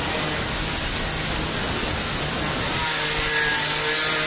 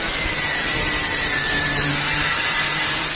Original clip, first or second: first